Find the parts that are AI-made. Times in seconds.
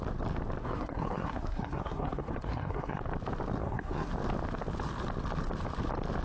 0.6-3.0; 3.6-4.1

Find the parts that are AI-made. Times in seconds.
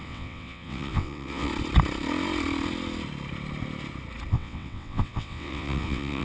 0.0-1.5; 4.3-6.2